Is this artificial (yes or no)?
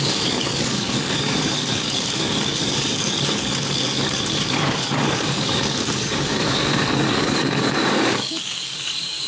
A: yes